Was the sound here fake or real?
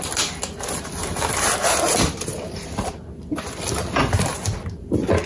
real